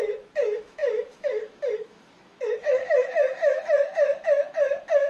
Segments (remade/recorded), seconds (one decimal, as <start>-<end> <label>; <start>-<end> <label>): 0.0-5.1 remade